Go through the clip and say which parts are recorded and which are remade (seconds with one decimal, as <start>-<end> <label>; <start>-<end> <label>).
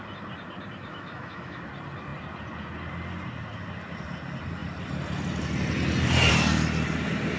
0.0-0.9 recorded; 0.9-1.6 remade; 1.6-7.4 recorded